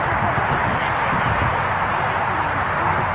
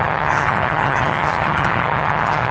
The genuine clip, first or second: first